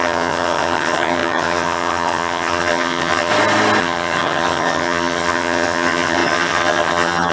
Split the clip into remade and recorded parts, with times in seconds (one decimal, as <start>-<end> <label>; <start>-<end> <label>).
0.0-3.3 remade; 3.3-3.8 recorded; 3.8-7.3 remade